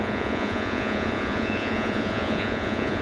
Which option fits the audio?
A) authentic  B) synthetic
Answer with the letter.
B